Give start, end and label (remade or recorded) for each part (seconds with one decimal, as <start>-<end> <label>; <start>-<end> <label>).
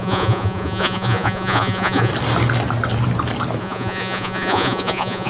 0.0-2.1 remade; 2.1-3.6 recorded; 3.6-5.3 remade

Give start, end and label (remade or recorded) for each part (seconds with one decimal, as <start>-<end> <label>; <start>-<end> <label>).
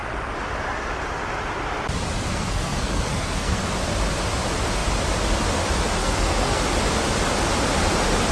0.0-2.3 recorded; 2.3-3.6 remade; 3.6-6.0 recorded; 6.0-6.6 remade; 6.6-8.3 recorded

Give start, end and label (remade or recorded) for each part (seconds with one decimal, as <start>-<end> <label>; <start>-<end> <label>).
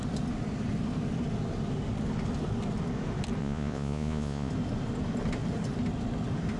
0.0-3.4 recorded; 3.4-4.5 remade; 4.5-6.6 recorded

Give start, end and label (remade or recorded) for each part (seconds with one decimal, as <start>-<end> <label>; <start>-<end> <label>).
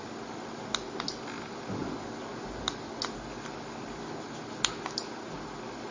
0.0-5.9 recorded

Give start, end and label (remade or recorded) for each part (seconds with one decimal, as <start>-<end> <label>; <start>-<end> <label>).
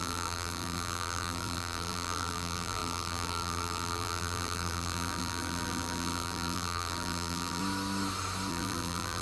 0.0-7.6 remade; 7.6-8.5 recorded; 8.5-9.2 remade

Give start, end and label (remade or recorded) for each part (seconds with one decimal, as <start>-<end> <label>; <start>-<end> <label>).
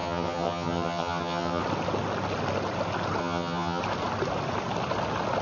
0.0-1.6 remade; 1.6-3.2 recorded; 3.2-3.8 remade; 3.8-5.4 recorded